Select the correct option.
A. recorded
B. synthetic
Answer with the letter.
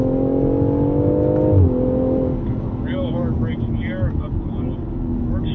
A